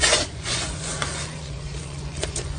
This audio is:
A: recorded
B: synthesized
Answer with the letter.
B